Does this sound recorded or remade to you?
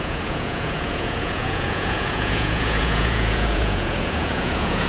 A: remade